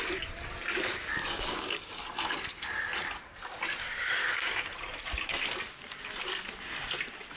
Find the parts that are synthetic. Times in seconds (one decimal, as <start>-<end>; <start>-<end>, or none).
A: 1.2-2.0; 4.2-4.7